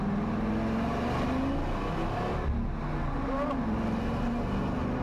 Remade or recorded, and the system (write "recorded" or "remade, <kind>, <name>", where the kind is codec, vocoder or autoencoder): recorded